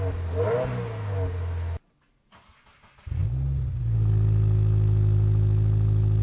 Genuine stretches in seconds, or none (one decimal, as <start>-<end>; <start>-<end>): 0.0-6.2

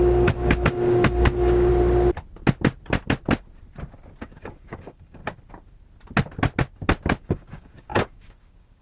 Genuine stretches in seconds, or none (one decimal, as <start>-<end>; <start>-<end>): 1.7-4.2; 5.2-7.2